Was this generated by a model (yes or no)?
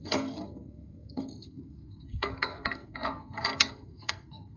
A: yes